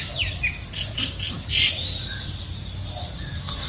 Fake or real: real